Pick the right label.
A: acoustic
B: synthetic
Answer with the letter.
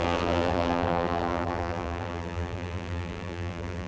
B